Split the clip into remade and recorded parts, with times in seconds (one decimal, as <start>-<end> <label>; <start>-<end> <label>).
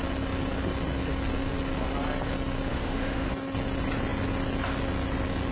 0.0-2.7 recorded; 2.7-3.3 remade; 3.3-5.5 recorded